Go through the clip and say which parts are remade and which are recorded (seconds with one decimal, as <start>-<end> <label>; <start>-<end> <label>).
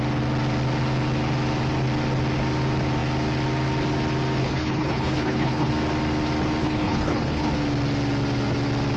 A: 0.0-4.4 recorded; 4.4-5.7 remade; 5.7-6.6 recorded; 6.6-7.5 remade; 7.5-9.0 recorded